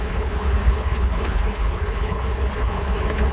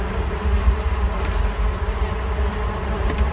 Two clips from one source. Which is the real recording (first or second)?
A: second